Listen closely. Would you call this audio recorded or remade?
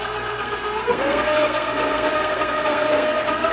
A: remade